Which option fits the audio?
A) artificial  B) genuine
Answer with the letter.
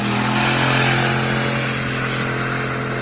B